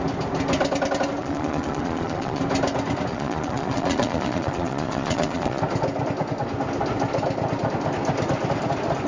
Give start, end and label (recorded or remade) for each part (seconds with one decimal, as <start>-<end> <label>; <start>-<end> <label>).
0.0-1.2 recorded; 1.2-2.4 remade; 2.4-3.1 recorded; 3.1-5.6 remade; 5.6-9.1 recorded